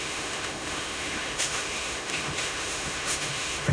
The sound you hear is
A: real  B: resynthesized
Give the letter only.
B